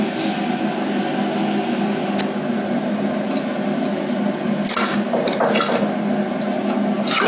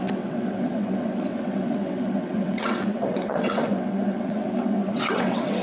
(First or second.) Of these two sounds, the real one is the first